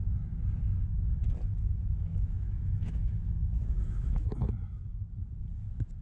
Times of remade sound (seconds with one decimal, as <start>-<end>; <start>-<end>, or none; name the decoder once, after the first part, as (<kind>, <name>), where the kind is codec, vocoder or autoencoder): 2.1-4.5 (autoencoder, DAC-VAE)